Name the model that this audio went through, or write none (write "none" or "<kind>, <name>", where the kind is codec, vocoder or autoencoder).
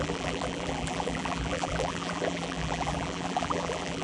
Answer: vocoder, BigVGAN v2